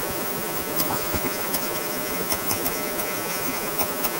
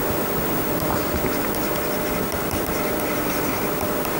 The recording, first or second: second